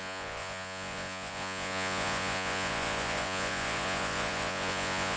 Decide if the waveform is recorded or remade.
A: remade